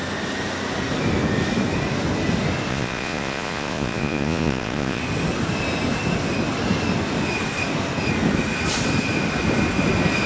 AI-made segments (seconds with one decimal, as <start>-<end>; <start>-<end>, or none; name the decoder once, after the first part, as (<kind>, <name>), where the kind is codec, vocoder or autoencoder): 2.7-5.0 (vocoder, Vocos)